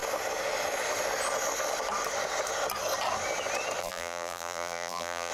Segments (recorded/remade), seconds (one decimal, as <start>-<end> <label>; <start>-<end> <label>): 0.0-3.8 recorded; 3.8-5.3 remade